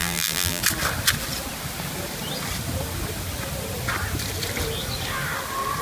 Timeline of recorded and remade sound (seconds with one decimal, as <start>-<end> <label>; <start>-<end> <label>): 0.0-0.6 remade; 0.6-5.8 recorded